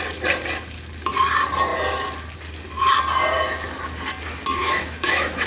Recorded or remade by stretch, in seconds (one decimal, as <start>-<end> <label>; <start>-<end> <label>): 0.0-4.6 recorded; 4.6-5.5 remade